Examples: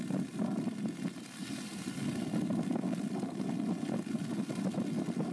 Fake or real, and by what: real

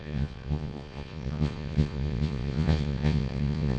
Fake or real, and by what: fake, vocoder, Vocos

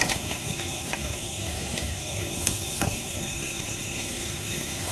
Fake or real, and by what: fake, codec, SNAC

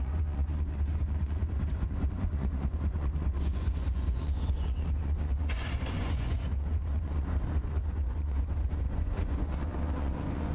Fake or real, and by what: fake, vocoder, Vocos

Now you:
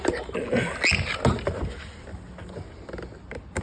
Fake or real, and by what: real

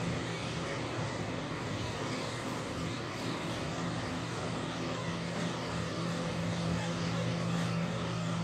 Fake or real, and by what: fake, codec, DAC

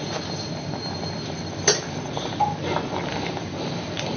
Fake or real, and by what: real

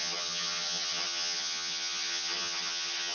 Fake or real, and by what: fake, vocoder, HiFi-GAN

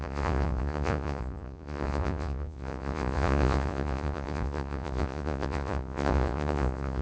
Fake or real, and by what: fake, vocoder, Vocos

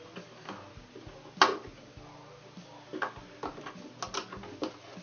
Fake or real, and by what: real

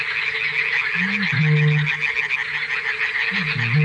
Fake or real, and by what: real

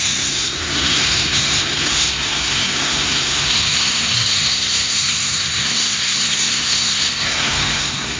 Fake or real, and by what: fake, codec, SNAC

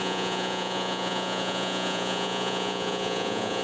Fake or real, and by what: fake, vocoder, Vocos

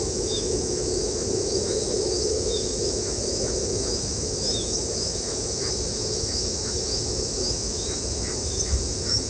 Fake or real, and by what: fake, autoencoder, DAC-VAE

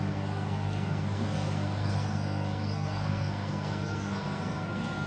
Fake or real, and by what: fake, codec, SNAC